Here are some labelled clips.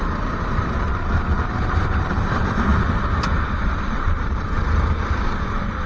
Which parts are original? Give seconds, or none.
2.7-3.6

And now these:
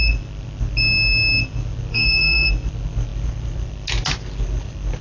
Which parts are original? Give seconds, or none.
0.0-1.9; 2.5-5.0

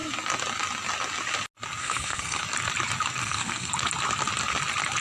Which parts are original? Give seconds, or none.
0.0-1.8; 2.4-3.2; 3.7-5.0

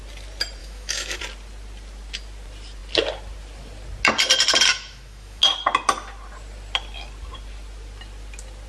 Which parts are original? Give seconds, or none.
0.0-0.6; 1.2-4.7; 5.4-8.7

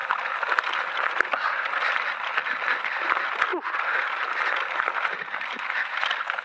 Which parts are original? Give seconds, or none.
0.0-6.4

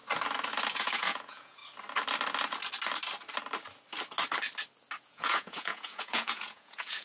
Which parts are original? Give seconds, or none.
0.0-0.7; 1.6-5.0

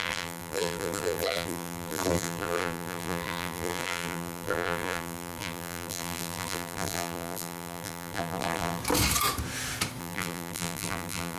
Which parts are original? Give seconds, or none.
8.8-10.0

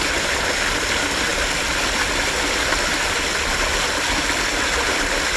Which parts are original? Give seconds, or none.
0.0-5.4